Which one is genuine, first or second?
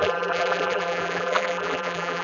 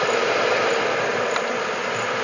second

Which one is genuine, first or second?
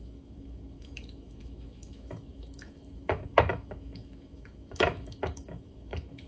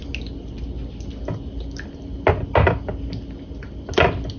second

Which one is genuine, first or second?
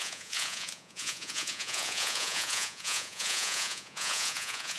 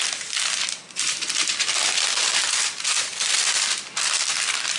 second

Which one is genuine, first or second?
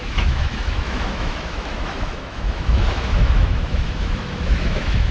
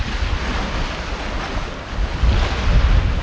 second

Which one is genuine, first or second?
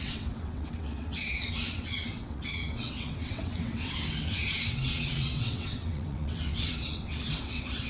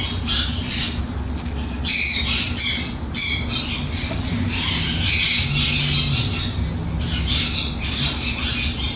second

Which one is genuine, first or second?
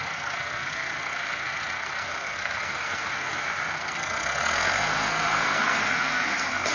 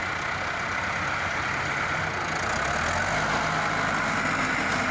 second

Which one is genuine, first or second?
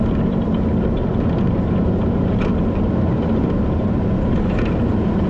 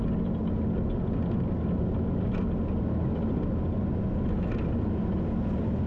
second